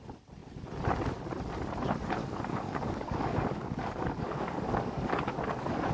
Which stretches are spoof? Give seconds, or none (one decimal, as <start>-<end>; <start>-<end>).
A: 2.2-5.9